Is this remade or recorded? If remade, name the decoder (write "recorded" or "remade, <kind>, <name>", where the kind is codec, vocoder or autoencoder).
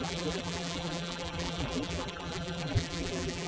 remade, vocoder, BigVGAN v2